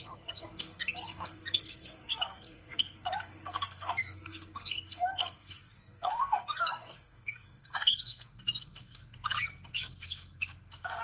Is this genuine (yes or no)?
no